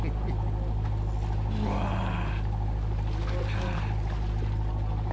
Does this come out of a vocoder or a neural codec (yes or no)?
no